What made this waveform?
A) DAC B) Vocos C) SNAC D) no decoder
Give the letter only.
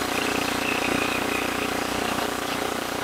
A